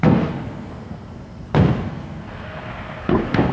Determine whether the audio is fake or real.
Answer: fake